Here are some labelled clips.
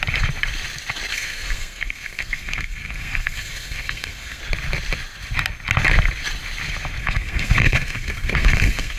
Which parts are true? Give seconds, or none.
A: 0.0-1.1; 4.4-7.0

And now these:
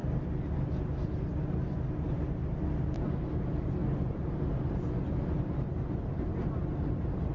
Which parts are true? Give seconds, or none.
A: 0.0-7.3

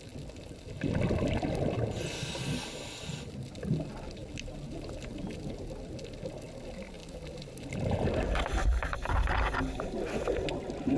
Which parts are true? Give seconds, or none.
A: 0.0-11.0

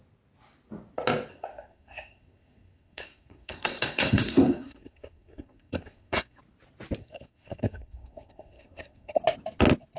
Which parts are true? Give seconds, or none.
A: 0.0-1.3; 6.4-7.0; 9.2-10.0

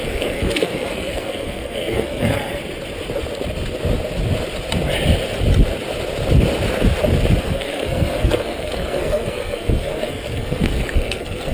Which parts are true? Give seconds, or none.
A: 2.6-7.4

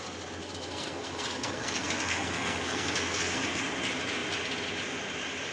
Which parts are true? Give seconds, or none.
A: 0.0-0.4; 3.6-5.5

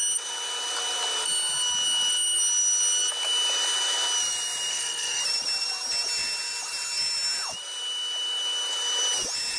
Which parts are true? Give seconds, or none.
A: 0.0-4.7; 5.2-9.6

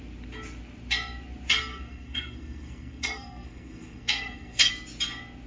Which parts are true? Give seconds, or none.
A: 0.0-1.7; 4.7-5.5